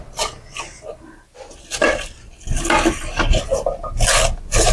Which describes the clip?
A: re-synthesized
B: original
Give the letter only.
B